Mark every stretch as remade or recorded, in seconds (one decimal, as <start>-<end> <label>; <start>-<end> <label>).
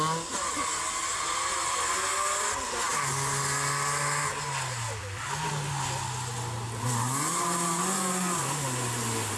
0.0-1.1 recorded; 1.1-2.1 remade; 2.1-5.0 recorded; 5.0-5.5 remade; 5.5-9.4 recorded